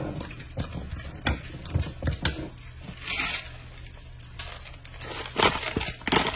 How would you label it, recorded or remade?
recorded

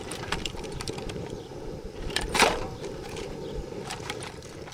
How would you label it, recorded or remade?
remade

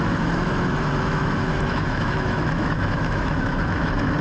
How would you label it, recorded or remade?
remade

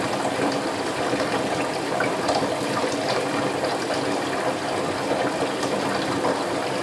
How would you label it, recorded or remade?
recorded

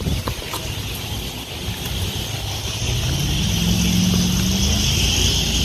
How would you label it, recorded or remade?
recorded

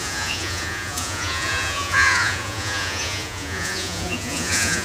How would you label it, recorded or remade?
remade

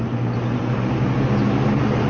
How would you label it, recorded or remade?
recorded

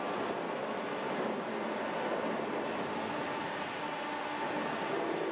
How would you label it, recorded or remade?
recorded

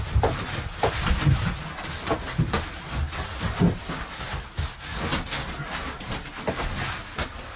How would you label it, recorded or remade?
recorded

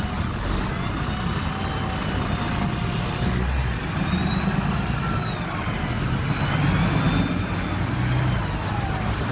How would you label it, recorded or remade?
recorded